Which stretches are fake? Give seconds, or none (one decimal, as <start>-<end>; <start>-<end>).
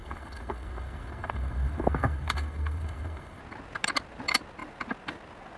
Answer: 0.0-3.4